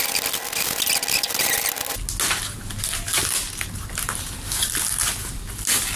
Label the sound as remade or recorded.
recorded